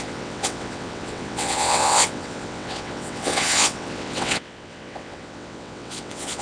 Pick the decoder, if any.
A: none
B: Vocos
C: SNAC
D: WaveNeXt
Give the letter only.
D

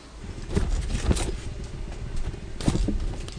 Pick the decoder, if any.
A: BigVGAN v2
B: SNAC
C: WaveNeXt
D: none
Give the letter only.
D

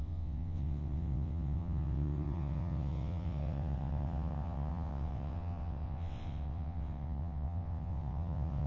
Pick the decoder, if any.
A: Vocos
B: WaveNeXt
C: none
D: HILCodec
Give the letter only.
B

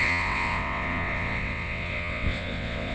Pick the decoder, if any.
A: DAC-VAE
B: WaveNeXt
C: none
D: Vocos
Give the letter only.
B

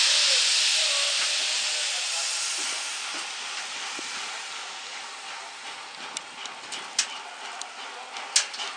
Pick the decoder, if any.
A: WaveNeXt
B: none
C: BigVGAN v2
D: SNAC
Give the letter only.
B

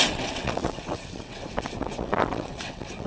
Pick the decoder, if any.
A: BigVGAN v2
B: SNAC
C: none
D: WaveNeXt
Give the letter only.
D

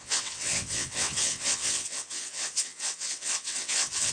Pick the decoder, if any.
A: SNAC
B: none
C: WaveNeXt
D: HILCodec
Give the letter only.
C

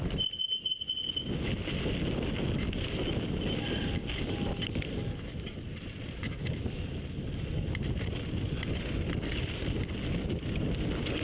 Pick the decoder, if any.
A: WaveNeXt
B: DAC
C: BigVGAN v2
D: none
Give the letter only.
D